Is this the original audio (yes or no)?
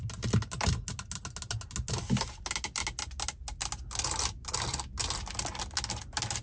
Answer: yes